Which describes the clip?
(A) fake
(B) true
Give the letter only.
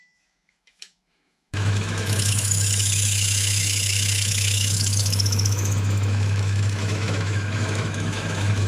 A